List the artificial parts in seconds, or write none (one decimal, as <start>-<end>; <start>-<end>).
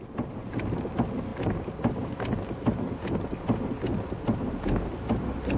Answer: none